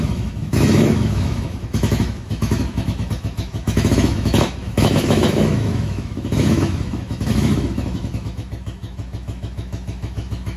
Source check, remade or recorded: remade